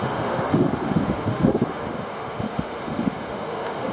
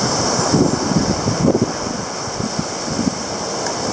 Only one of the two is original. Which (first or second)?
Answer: second